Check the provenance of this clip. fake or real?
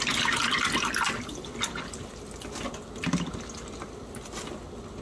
real